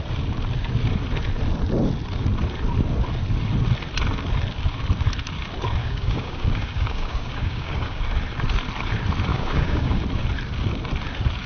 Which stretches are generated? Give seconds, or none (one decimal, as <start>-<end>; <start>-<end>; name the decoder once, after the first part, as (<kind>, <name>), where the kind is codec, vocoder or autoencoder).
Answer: 5.8-8.0 (codec, DAC); 9.3-10.0